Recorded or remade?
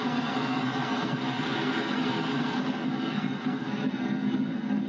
remade